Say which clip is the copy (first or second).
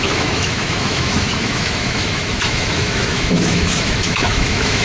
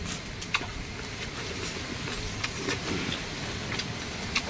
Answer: first